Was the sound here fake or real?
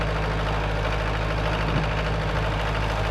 real